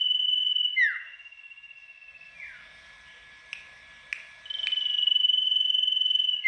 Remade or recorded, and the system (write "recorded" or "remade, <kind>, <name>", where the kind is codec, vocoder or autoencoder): recorded